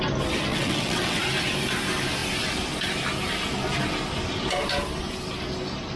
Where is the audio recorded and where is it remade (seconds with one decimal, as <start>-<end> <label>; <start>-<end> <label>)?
0.0-0.5 recorded; 0.5-1.2 remade; 1.2-6.0 recorded